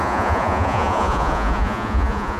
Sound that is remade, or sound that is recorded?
remade